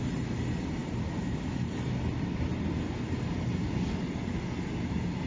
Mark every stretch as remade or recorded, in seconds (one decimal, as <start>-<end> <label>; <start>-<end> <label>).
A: 0.0-5.3 recorded